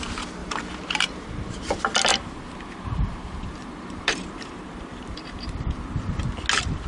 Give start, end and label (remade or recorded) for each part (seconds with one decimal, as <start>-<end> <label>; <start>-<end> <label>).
0.0-0.4 recorded; 0.4-1.7 remade; 1.7-2.1 recorded; 2.1-6.2 remade; 6.2-6.9 recorded